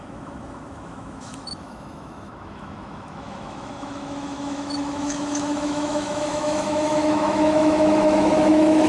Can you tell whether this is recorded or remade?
remade